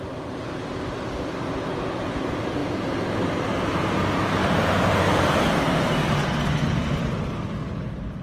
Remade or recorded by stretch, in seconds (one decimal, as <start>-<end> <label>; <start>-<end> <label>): 0.0-4.4 recorded; 4.4-6.1 remade; 6.1-8.2 recorded